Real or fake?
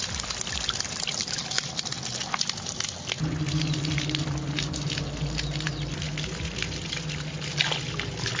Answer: real